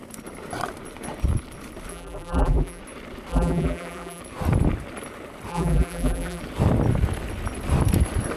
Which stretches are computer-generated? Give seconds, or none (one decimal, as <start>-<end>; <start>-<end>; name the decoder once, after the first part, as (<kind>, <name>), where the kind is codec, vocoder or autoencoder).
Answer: 1.9-2.8 (vocoder, BigVGAN v2); 3.3-4.2; 5.5-6.4